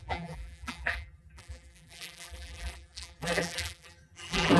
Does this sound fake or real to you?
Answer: fake